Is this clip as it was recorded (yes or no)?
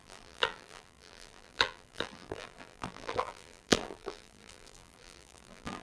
no